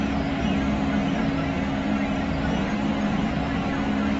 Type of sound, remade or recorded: recorded